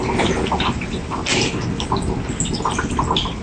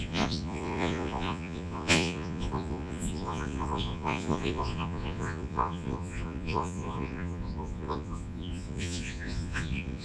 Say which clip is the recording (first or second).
first